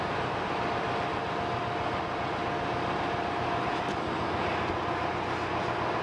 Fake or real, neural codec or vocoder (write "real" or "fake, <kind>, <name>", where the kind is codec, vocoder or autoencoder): real